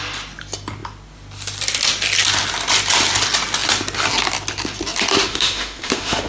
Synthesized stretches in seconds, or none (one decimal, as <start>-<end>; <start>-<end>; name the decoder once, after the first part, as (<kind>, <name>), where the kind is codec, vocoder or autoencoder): 5.2-6.3 (autoencoder, DAC-VAE)